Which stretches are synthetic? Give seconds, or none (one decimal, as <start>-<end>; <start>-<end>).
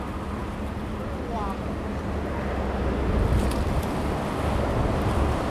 none